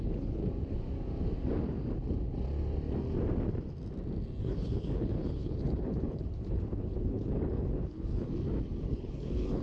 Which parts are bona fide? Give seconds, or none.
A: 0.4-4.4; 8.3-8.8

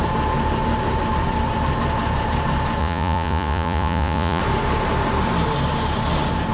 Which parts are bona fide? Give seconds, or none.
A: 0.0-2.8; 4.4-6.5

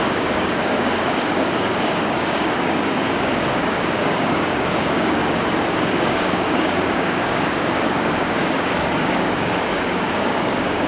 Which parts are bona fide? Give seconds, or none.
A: 5.2-5.9

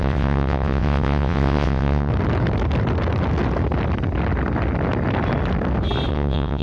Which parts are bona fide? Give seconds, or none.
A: 2.1-6.1

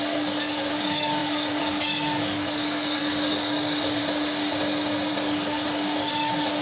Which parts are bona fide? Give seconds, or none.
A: 4.0-5.1

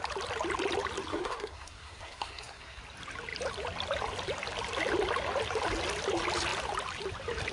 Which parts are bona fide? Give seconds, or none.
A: 0.0-1.1; 2.8-7.5

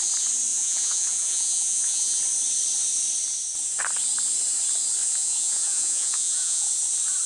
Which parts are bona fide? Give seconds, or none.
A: 0.0-0.5; 2.2-5.0; 6.7-7.3

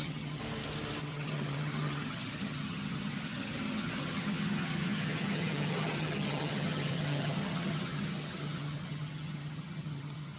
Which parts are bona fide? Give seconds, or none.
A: 0.4-1.0